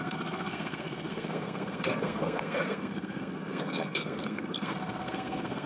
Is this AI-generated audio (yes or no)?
yes